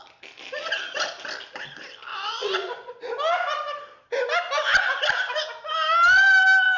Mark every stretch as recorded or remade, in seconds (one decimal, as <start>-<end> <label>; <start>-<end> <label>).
0.0-2.1 recorded; 2.1-3.0 remade; 3.0-6.8 recorded